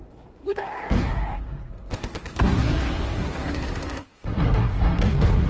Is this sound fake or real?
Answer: fake